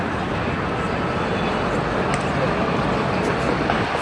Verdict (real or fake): real